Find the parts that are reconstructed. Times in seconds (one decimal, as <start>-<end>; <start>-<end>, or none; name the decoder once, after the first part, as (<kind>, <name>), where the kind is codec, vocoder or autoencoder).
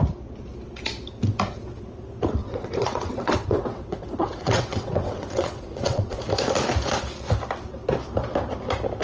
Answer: 2.4-6.2 (vocoder, WaveNeXt)